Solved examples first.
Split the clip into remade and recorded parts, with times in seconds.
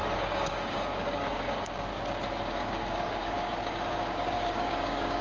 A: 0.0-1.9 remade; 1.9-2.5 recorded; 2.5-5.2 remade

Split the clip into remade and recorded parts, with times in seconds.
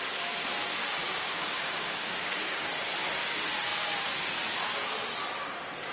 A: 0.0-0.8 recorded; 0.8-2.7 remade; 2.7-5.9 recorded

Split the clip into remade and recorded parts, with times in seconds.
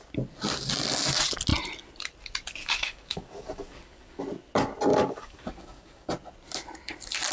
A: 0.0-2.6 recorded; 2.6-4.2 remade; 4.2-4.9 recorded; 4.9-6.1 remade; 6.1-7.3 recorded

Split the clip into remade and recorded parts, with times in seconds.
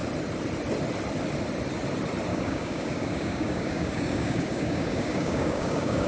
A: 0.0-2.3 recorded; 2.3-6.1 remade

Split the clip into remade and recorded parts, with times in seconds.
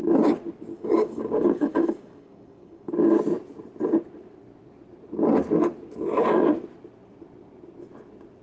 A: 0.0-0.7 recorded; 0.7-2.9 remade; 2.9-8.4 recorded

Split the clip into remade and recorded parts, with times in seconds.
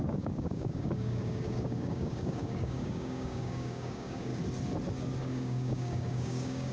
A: 0.0-4.3 remade; 4.3-5.2 recorded; 5.2-6.7 remade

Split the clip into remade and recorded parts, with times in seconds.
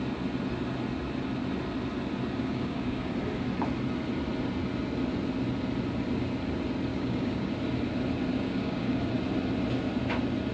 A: 0.0-2.4 recorded; 2.4-3.1 remade; 3.1-6.9 recorded; 6.9-7.5 remade; 7.5-8.3 recorded; 8.3-9.0 remade; 9.0-10.5 recorded